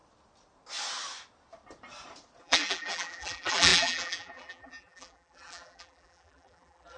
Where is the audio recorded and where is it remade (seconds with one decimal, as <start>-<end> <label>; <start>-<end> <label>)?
0.0-2.4 recorded; 2.4-7.0 remade